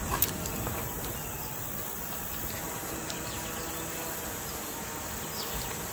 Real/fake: real